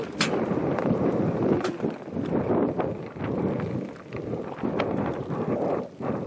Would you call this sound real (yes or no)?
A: yes